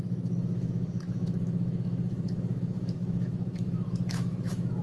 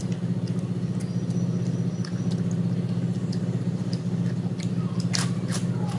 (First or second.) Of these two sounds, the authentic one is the second